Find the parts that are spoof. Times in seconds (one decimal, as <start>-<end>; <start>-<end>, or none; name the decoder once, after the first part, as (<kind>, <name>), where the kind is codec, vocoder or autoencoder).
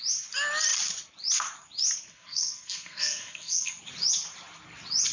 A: 2.1-3.8 (codec, SNAC)